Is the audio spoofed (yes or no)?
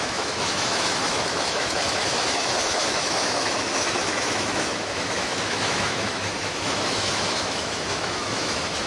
yes